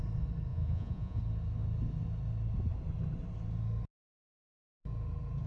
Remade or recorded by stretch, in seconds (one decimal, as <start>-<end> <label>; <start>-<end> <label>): 0.0-0.5 recorded; 0.5-1.2 remade; 1.2-5.5 recorded